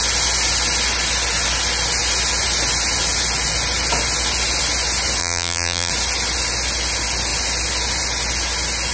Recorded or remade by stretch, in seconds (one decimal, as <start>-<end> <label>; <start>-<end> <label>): 0.0-5.2 recorded; 5.2-5.9 remade; 5.9-8.9 recorded